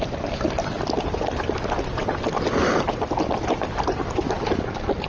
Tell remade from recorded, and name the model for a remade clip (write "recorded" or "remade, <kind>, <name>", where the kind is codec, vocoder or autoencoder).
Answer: recorded